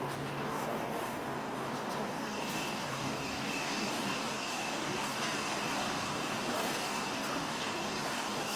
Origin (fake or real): fake